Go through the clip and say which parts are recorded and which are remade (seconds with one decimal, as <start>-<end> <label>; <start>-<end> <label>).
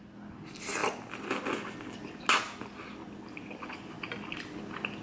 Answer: 0.0-5.0 recorded